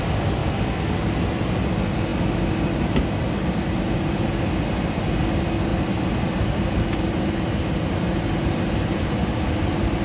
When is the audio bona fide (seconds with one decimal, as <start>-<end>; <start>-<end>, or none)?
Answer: 0.0-10.0

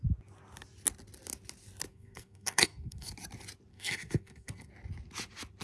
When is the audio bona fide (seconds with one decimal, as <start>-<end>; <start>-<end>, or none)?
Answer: 0.0-1.9; 3.1-3.7; 4.7-5.6